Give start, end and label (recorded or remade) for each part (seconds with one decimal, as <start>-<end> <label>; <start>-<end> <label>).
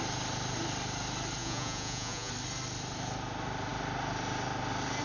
0.0-1.4 recorded; 1.4-2.3 remade; 2.3-5.0 recorded